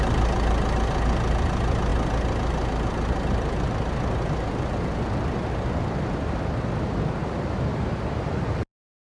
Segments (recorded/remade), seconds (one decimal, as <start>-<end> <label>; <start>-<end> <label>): 0.0-9.1 recorded